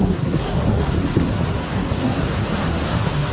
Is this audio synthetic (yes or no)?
yes